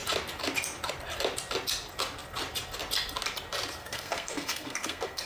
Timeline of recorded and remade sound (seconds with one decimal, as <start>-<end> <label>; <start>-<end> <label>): 0.0-3.8 recorded; 3.8-5.3 remade